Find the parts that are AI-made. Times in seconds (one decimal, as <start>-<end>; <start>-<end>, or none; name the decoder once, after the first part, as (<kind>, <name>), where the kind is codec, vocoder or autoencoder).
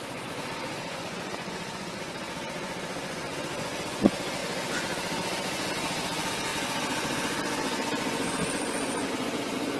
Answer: 0.0-9.8 (vocoder, Vocos)